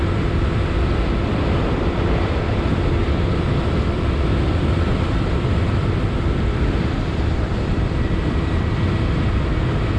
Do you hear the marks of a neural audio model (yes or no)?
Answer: yes